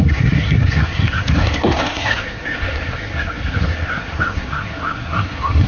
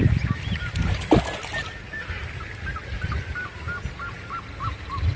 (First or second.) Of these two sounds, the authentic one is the second